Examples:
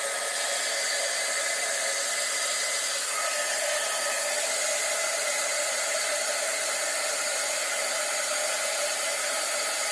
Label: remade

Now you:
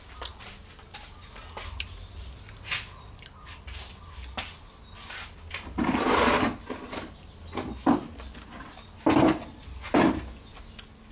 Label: recorded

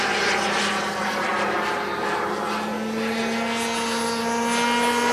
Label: recorded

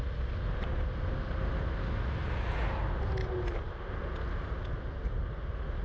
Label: recorded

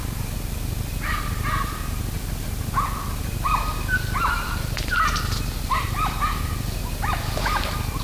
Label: remade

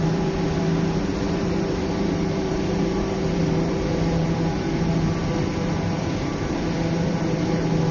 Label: remade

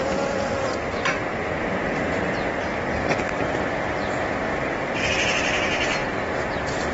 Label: remade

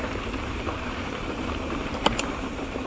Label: remade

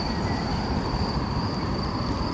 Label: remade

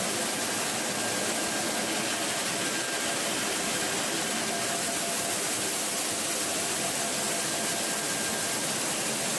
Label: recorded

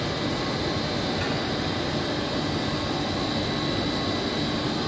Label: recorded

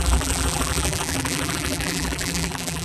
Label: remade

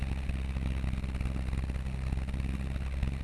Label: recorded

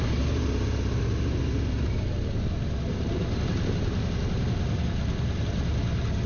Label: recorded